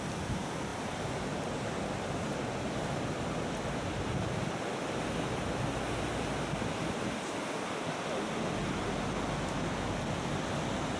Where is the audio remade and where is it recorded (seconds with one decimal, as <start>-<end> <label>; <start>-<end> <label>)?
0.0-11.0 recorded